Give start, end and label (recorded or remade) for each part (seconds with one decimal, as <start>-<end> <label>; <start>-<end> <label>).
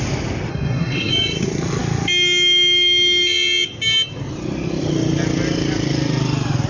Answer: 0.0-0.5 recorded; 0.5-1.1 remade; 1.1-6.7 recorded